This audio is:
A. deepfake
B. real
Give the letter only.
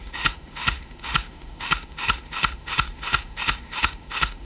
A